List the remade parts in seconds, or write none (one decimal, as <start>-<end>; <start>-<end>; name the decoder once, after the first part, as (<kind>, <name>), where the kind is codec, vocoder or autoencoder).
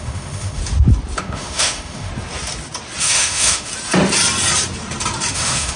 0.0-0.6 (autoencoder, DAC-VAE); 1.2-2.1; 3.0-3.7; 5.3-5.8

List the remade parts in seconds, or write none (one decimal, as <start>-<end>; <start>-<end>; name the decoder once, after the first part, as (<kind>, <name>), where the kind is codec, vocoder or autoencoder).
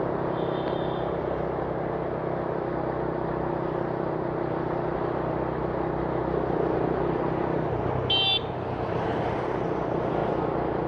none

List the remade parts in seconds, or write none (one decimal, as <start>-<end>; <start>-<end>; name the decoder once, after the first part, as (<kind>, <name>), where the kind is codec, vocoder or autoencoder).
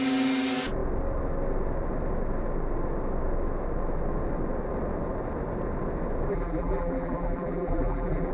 6.3-8.3 (vocoder, BigVGAN v2)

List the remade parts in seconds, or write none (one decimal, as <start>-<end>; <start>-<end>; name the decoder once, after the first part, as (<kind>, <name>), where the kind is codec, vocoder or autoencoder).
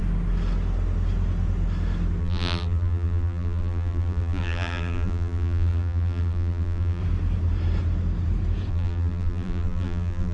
2.2-7.0 (vocoder, BigVGAN v2); 8.7-10.3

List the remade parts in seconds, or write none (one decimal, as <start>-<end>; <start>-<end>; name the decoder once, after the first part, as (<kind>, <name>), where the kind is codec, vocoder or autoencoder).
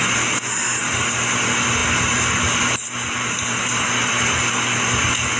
none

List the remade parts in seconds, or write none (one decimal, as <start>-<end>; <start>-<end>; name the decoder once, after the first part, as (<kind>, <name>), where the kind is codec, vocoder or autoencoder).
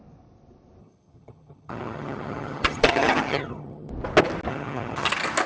0.8-3.9 (vocoder, HiFi-GAN); 4.5-5.1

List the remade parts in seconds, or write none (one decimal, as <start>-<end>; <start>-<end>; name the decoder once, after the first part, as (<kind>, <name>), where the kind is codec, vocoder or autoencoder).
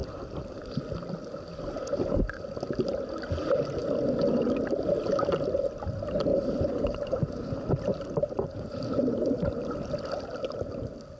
0.0-0.7 (vocoder, BigVGAN v2); 6.3-9.9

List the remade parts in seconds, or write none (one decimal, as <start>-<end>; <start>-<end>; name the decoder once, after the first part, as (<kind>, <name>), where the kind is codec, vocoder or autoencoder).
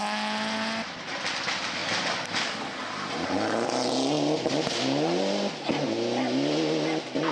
none